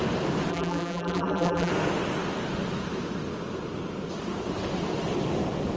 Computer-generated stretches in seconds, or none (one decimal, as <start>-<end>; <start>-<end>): 0.5-1.7